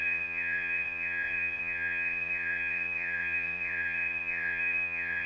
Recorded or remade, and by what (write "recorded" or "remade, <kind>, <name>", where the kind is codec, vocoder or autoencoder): remade, vocoder, Vocos